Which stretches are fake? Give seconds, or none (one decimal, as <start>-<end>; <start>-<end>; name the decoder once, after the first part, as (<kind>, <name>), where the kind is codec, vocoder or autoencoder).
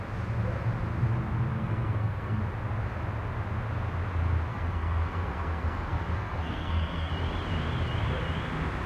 1.5-2.4 (codec, SNAC); 4.5-7.1